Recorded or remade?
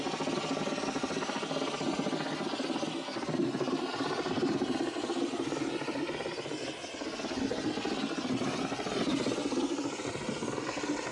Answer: recorded